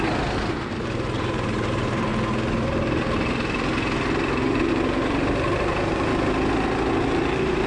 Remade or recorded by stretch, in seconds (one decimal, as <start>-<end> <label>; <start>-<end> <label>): 0.0-2.1 remade; 2.1-4.7 recorded; 4.7-6.1 remade; 6.1-7.3 recorded; 7.3-7.7 remade